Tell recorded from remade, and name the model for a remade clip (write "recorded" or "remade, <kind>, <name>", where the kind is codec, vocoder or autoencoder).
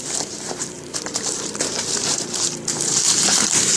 remade, vocoder, BigVGAN v2